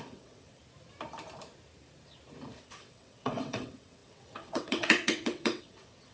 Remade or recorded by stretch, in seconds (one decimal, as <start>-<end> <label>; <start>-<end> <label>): 0.0-0.6 remade; 0.6-2.6 recorded; 2.6-6.1 remade